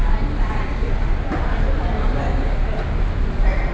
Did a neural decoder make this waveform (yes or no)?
no